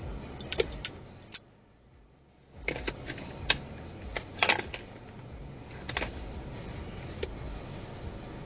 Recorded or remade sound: recorded